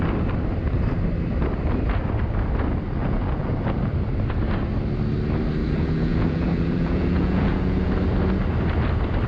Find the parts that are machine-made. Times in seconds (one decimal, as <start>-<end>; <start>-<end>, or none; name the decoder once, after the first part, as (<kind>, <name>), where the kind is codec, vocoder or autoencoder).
3.0-3.6 (vocoder, Vocos); 5.6-7.9

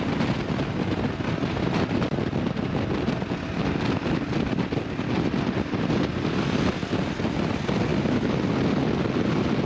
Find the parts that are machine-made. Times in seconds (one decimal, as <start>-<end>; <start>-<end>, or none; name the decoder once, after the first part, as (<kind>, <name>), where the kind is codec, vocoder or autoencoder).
none

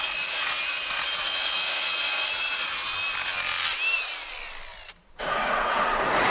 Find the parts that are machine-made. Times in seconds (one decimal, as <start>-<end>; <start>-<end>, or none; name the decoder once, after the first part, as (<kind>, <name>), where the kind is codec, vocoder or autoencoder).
0.0-2.9 (vocoder, Vocos); 5.2-6.3

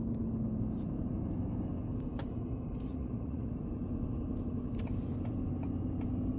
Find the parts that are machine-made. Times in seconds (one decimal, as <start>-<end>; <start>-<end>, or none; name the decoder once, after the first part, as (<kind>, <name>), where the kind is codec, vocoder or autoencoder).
2.9-3.5 (vocoder, Vocos)

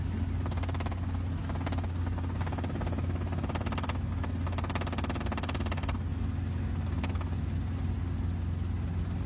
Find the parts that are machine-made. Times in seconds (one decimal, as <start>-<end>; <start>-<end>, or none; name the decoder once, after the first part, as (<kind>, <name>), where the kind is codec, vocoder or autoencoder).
none